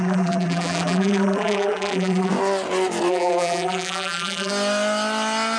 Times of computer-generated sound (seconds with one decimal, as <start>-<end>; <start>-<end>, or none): 0.0-2.3; 3.1-4.5